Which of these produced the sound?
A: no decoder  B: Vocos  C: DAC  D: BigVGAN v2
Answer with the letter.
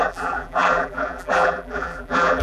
D